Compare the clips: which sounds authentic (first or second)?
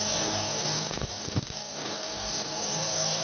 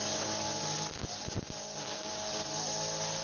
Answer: second